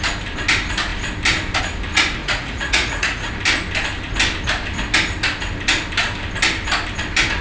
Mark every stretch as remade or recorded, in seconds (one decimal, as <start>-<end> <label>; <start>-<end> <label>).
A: 0.0-2.2 recorded; 2.2-3.3 remade; 3.3-7.4 recorded